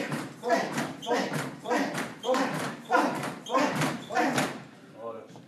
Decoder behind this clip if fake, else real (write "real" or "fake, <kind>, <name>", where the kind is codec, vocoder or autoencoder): fake, vocoder, BigVGAN v2